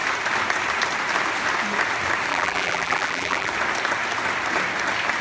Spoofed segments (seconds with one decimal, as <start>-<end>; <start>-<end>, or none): 2.3-3.5